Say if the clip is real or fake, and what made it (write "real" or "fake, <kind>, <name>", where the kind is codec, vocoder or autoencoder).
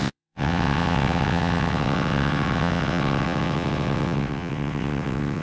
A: fake, vocoder, WaveNeXt